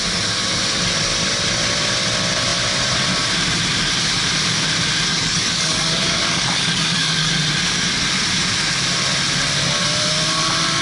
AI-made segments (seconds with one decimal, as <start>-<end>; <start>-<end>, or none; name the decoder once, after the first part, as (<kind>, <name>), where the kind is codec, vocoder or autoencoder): 5.1-7.3 (codec, DAC)